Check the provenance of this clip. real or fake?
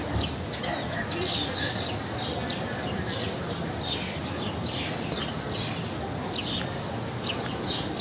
real